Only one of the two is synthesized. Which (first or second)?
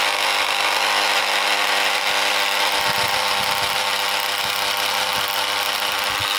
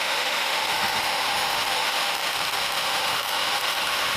second